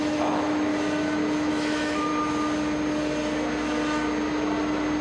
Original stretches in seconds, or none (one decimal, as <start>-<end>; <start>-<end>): 0.7-1.5; 2.1-5.0